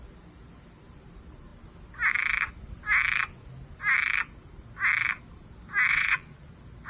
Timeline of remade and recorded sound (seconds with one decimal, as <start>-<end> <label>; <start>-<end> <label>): 0.0-5.9 recorded; 5.9-6.5 remade; 6.5-6.9 recorded